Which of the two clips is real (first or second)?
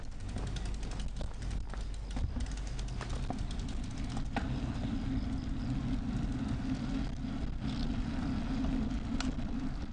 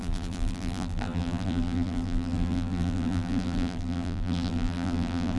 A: first